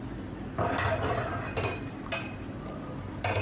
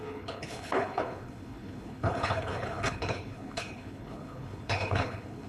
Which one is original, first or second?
first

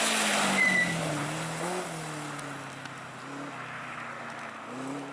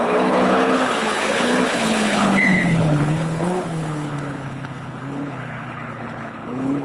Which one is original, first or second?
first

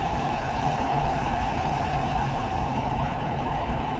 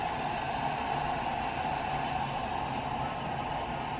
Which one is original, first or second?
second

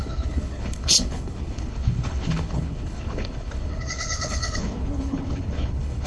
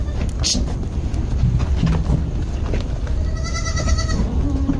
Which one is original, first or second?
second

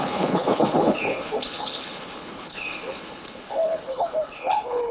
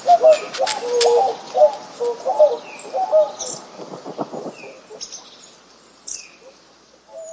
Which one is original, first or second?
second